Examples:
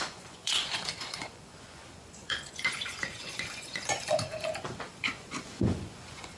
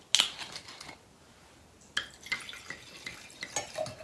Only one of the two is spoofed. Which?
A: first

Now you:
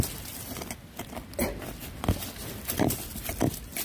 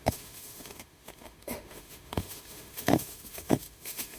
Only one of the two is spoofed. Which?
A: second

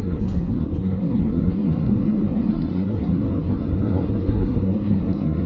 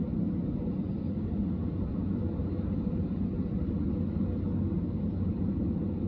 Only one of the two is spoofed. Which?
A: first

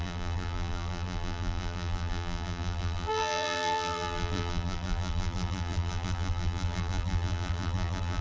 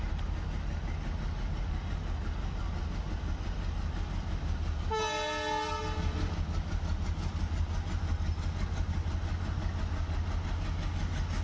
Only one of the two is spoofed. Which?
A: first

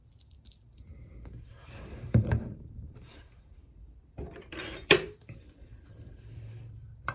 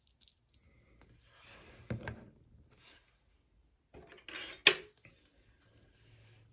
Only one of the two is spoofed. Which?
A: first